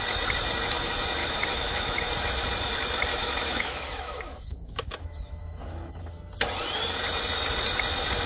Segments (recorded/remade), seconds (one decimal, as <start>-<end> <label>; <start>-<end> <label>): 0.0-1.2 recorded; 1.2-2.1 remade; 2.1-3.1 recorded; 3.1-6.0 remade; 6.0-8.3 recorded